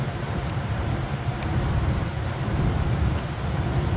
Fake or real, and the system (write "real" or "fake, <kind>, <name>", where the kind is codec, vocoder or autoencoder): fake, vocoder, BigVGAN v2